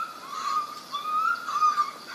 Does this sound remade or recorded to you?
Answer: recorded